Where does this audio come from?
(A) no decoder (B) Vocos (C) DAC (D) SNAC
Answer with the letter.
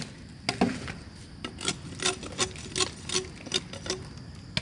A